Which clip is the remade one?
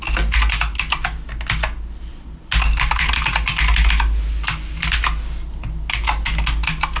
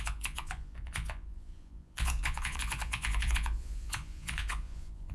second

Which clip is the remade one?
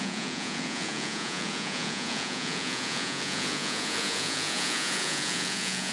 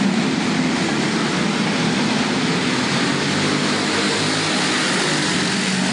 first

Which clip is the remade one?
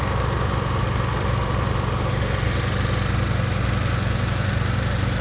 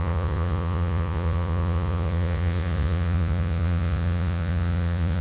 second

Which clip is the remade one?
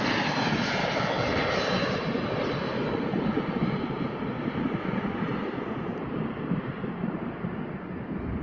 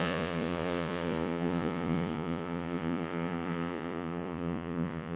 second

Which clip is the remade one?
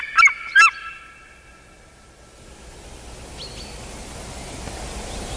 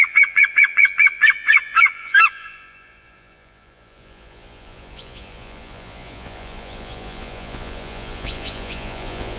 second